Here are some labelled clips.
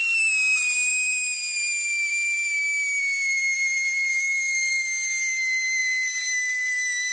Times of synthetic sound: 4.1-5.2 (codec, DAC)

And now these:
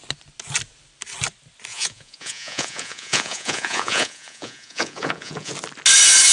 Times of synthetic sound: 1.7-5.5 (vocoder, Vocos)